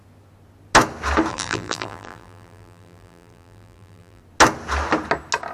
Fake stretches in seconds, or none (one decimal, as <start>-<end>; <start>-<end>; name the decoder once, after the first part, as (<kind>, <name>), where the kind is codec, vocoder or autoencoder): 1.3-4.2 (vocoder, BigVGAN v2)